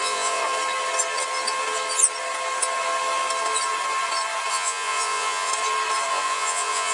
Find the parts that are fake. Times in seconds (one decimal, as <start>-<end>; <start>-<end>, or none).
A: 0.0-0.4; 4.5-5.5; 6.1-6.9